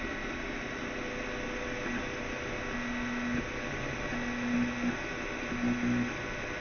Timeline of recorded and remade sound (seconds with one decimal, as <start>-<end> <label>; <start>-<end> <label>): 0.0-6.6 recorded

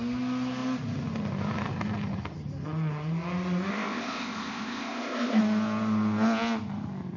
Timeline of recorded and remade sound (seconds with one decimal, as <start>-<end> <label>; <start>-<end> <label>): 0.0-3.7 recorded; 3.7-5.4 remade; 5.4-7.2 recorded